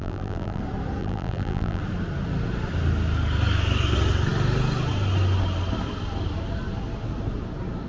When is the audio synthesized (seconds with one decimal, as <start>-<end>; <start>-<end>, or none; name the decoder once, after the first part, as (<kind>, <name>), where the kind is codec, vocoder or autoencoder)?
0.0-0.6 (vocoder, BigVGAN v2); 1.0-1.8